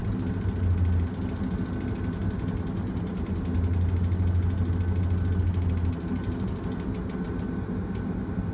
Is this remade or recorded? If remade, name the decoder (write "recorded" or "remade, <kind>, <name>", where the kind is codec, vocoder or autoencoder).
recorded